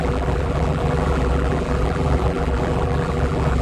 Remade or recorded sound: remade